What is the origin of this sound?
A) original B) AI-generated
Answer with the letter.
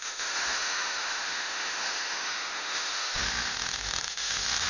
B